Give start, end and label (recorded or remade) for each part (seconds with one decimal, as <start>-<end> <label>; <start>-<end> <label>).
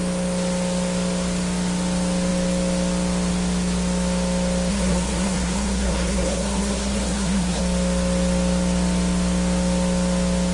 0.0-4.7 recorded; 4.7-7.6 remade; 7.6-10.5 recorded